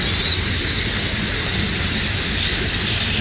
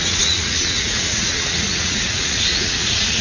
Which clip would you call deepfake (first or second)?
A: second